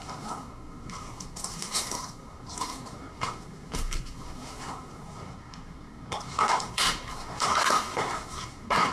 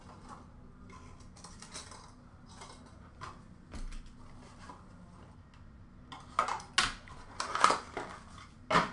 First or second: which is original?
second